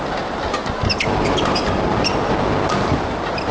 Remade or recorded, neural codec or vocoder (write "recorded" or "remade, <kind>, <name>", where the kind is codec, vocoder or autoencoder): recorded